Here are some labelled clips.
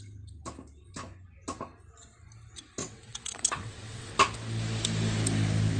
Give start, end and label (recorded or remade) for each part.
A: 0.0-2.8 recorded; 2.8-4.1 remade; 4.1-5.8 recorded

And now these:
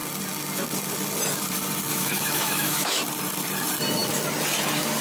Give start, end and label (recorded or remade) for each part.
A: 0.0-1.9 recorded; 1.9-3.0 remade; 3.0-5.0 recorded

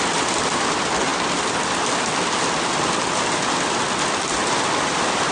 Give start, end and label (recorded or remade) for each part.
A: 0.0-5.3 recorded

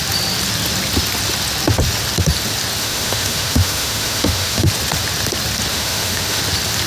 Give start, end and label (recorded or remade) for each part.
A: 0.0-2.8 recorded; 2.8-4.7 remade; 4.7-5.7 recorded; 5.7-6.4 remade; 6.4-6.9 recorded

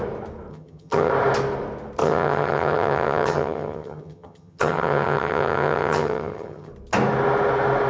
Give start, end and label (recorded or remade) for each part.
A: 0.0-0.5 recorded; 0.5-1.1 remade; 1.1-2.0 recorded; 2.0-6.7 remade; 6.7-7.9 recorded